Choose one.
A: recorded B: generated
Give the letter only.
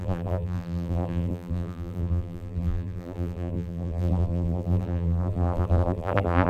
B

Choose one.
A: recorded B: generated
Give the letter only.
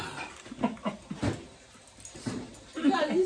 A